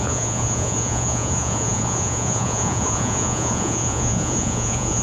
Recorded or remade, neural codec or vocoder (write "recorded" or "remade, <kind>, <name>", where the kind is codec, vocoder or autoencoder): remade, vocoder, Vocos